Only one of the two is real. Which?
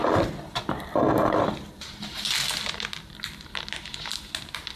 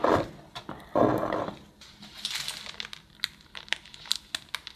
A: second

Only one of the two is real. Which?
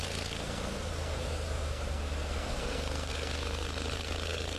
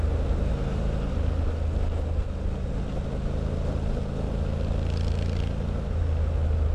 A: second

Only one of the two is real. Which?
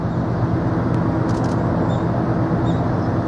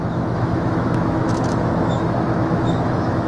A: first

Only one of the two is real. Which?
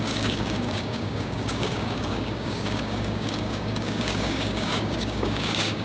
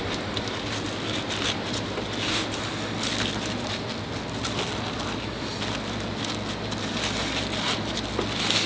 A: second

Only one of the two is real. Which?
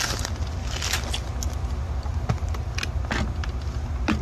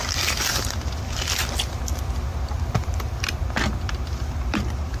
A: first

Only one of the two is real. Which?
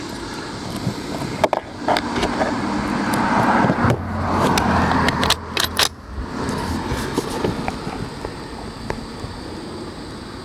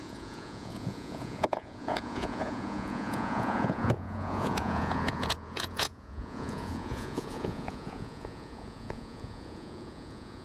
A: first